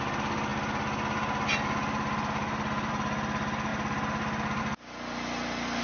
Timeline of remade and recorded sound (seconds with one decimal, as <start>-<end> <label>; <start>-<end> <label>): 0.0-5.8 recorded